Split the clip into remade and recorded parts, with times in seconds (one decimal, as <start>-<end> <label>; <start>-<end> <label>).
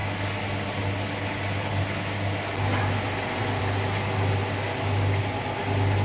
0.0-6.0 recorded